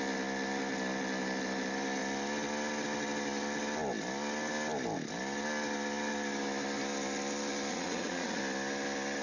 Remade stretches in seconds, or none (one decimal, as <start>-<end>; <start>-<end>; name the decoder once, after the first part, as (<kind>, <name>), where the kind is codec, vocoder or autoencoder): 7.7-8.4 (vocoder, Vocos)